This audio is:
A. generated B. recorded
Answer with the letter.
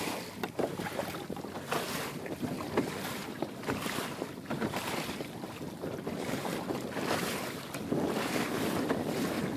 B